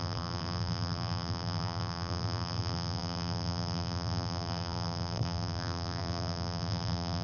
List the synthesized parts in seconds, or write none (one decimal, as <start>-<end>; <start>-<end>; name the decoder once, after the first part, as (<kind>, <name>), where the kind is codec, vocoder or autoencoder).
0.0-7.2 (vocoder, BigVGAN v2)

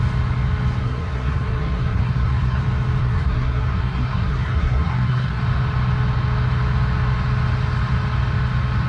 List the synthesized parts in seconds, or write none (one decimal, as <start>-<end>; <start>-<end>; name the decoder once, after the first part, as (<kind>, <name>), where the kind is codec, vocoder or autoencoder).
0.8-2.6 (codec, SNAC); 3.0-5.4

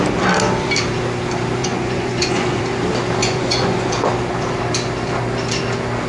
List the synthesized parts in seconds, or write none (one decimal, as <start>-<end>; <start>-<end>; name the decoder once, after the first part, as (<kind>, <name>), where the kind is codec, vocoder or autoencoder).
1.6-2.6 (vocoder, Vocos); 3.2-3.9

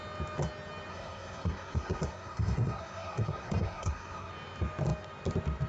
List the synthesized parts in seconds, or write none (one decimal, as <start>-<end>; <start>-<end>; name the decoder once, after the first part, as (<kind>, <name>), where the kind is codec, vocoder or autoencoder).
0.9-4.3 (codec, SNAC)

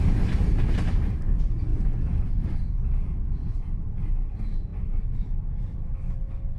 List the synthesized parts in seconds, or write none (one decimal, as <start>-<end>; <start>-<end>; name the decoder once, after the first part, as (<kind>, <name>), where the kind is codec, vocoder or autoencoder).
3.4-4.0 (vocoder, BigVGAN v2); 4.7-5.8

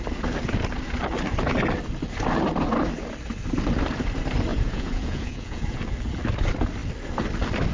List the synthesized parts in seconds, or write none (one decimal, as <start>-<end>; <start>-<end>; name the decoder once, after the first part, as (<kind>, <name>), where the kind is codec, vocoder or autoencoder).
4.5-5.8 (vocoder, Vocos)

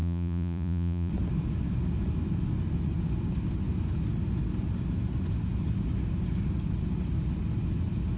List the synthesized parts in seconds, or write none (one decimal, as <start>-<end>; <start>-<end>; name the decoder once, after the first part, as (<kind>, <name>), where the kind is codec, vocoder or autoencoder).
0.0-1.1 (vocoder, Vocos)